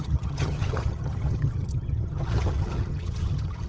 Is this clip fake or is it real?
fake